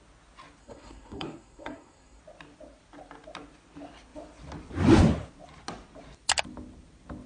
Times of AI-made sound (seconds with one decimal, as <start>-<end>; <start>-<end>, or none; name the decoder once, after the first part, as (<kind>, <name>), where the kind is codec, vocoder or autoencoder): 0.6-2.2 (codec, SNAC)